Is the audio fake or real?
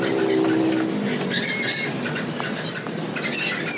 real